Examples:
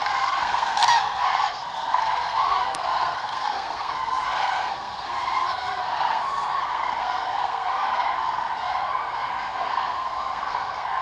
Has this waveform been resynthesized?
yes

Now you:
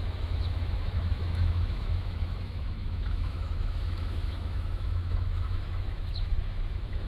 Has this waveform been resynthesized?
yes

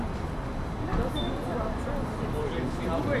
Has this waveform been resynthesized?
no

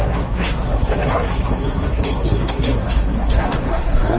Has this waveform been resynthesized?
yes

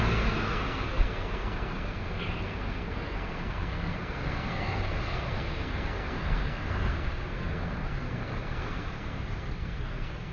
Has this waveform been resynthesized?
yes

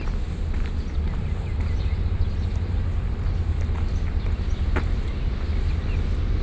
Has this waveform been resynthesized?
no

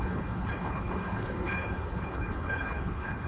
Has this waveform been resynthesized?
yes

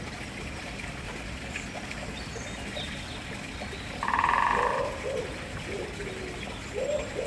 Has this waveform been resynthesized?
no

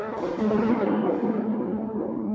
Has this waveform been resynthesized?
yes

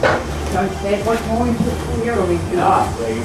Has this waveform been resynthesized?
yes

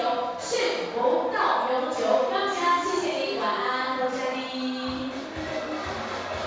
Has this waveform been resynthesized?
no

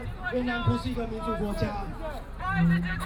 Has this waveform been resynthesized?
no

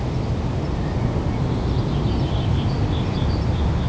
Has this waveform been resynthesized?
no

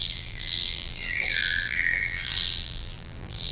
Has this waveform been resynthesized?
yes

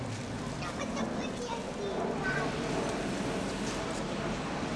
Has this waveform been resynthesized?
no